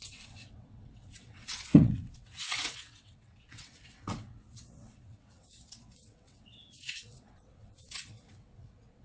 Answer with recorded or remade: remade